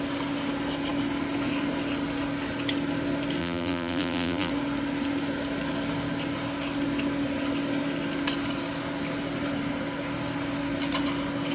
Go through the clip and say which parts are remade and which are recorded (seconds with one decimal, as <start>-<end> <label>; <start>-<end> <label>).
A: 0.0-3.4 recorded; 3.4-4.5 remade; 4.5-11.5 recorded